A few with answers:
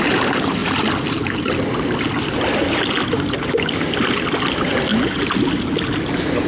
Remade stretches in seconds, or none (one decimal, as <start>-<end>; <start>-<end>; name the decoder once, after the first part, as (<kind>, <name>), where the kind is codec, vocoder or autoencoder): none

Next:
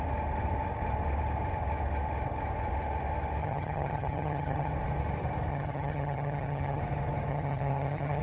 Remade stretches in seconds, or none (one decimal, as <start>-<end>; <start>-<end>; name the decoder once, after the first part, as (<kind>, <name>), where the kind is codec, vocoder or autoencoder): 3.4-4.7 (vocoder, HiFi-GAN); 5.5-6.8; 7.3-8.2

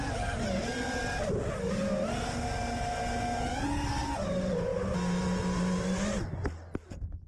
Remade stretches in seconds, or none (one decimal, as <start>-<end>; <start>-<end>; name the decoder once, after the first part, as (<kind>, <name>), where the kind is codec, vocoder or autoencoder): none

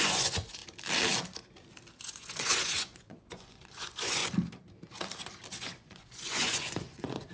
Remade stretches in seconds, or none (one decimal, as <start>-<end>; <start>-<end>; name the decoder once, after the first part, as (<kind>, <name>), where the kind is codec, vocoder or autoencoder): 0.0-0.6 (vocoder, Vocos); 2.0-4.2; 5.5-7.3